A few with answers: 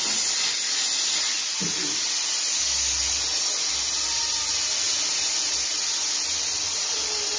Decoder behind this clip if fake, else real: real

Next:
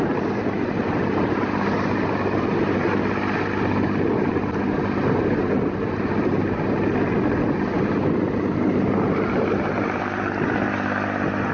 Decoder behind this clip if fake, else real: real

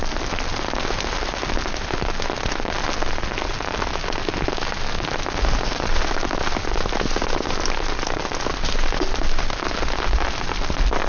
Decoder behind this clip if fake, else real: real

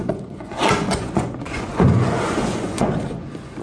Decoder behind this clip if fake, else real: fake, vocoder, Vocos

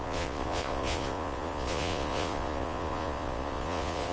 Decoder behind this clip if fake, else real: fake, vocoder, Vocos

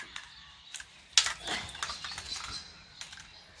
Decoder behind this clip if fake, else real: real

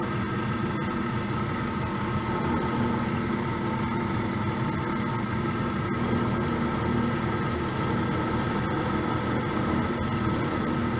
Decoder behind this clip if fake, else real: real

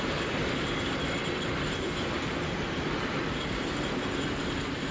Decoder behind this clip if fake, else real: real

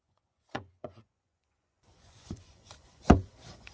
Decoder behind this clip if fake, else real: fake, vocoder, Vocos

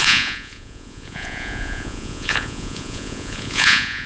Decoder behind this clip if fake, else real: fake, vocoder, Vocos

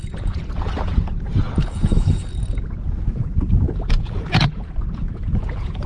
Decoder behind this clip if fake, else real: fake, vocoder, Vocos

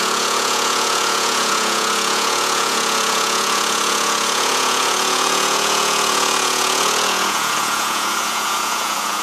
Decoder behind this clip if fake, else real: fake, vocoder, Vocos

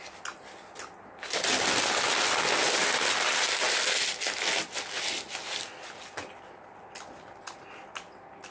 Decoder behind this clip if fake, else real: real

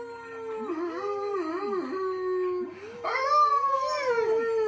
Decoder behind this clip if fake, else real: real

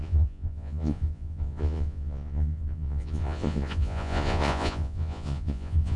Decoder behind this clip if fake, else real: fake, vocoder, Vocos